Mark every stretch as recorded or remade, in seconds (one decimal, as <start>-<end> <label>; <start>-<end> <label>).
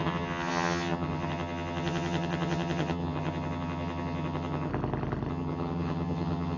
0.0-4.7 remade; 4.7-5.3 recorded; 5.3-6.6 remade